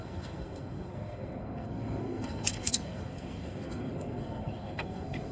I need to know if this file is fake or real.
fake